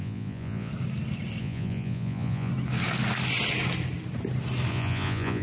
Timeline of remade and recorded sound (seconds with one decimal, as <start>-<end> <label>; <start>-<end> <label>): 0.0-0.7 remade; 0.7-1.4 recorded; 1.4-2.5 remade; 2.5-4.7 recorded; 4.7-5.4 remade